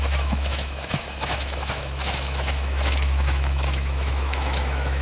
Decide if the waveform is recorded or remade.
remade